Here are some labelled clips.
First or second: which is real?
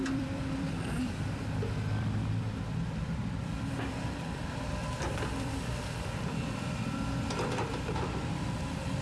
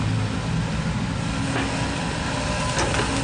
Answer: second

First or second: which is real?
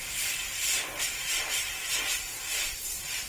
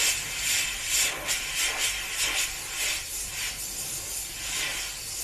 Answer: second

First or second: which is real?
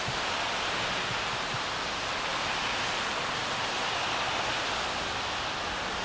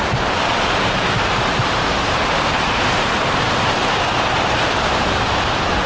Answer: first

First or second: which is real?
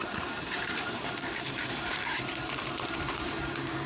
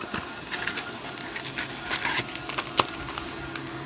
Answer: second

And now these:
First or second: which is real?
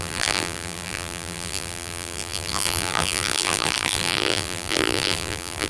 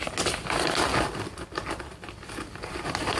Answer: second